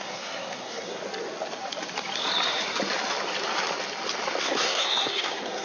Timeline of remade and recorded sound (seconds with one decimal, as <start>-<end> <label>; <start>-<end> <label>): 0.0-1.0 remade; 1.0-4.4 recorded; 4.4-5.6 remade